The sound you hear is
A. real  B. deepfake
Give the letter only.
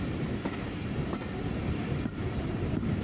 B